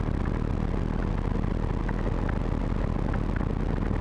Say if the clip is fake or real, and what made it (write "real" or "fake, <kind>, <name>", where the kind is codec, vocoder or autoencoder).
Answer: real